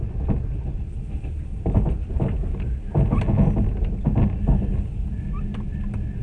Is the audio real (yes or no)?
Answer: yes